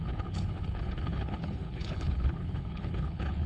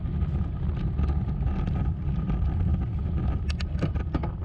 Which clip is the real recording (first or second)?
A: second